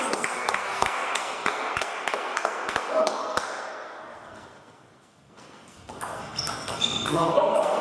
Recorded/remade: remade